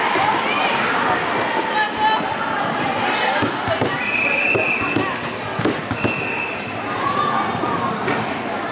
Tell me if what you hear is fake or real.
real